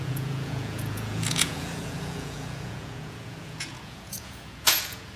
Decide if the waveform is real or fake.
fake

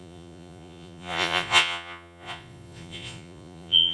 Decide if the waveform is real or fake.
fake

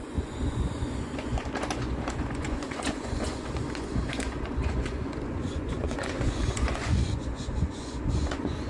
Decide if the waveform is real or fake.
fake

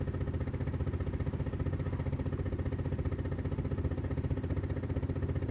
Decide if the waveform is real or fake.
real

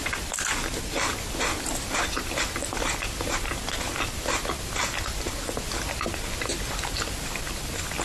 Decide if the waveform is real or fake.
real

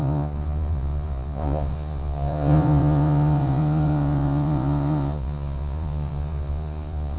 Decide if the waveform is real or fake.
fake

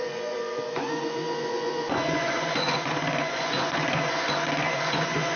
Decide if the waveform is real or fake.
fake